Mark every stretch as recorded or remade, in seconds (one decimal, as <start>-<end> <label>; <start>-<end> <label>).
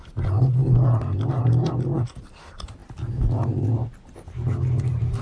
0.0-5.2 recorded